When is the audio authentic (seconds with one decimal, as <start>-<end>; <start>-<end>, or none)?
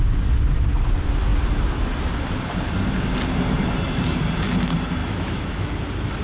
0.0-5.0; 5.7-6.2